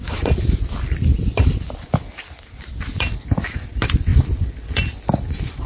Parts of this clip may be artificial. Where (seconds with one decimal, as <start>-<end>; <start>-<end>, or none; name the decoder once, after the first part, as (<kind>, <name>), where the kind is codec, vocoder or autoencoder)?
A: none